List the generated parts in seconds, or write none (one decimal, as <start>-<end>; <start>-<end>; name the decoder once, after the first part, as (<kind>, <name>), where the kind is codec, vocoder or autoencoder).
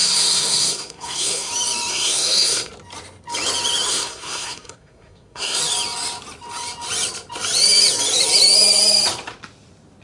0.0-1.5 (codec, SNAC); 1.9-2.7; 3.9-5.6